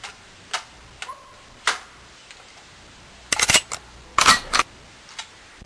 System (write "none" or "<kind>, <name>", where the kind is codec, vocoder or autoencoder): none